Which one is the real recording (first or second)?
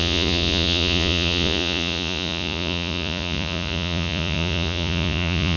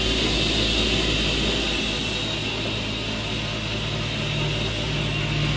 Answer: second